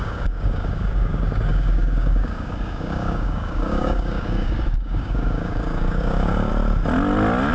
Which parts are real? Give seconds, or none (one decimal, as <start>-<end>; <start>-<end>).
6.5-7.5